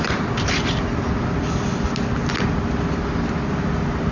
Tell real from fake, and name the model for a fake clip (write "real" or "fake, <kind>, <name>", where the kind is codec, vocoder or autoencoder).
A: real